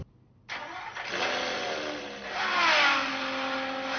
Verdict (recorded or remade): recorded